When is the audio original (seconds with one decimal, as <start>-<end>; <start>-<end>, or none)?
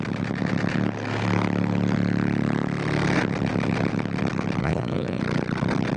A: 0.0-4.6; 5.2-6.0